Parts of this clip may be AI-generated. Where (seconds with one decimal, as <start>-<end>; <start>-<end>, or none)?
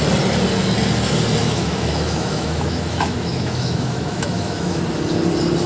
1.4-4.8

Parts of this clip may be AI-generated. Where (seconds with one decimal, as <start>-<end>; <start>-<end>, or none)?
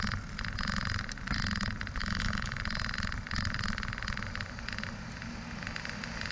2.0-2.6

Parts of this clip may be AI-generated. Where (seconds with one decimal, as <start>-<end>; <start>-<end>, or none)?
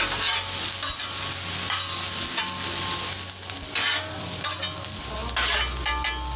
none